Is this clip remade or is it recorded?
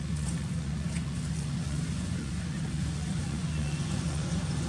remade